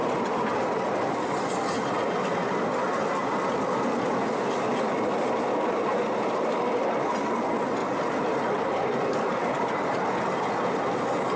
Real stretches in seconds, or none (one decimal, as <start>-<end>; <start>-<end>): 0.0-11.4